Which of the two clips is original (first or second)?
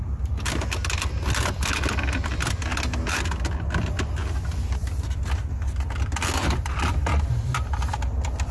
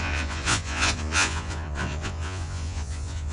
first